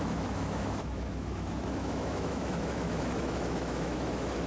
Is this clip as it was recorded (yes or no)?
no